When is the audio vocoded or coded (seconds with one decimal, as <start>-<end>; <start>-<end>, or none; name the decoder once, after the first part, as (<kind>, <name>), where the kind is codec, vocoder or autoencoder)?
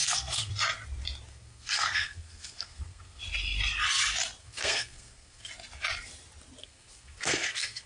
0.0-0.5 (codec, SNAC); 1.3-3.2; 4.4-5.5; 6.6-7.9